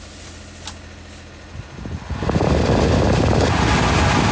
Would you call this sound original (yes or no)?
yes